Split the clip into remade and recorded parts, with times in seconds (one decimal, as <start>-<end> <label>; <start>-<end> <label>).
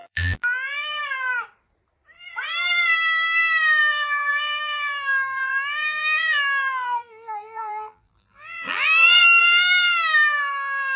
0.0-1.0 remade; 1.0-3.8 recorded; 3.8-9.4 remade; 9.4-10.4 recorded; 10.4-11.0 remade